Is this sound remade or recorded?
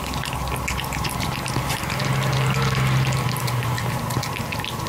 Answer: recorded